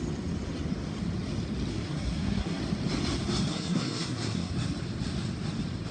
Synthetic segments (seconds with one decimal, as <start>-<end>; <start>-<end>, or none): 1.7-2.6; 3.5-4.5